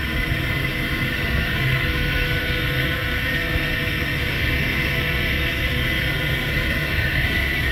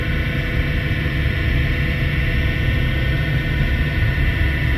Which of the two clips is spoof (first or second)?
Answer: first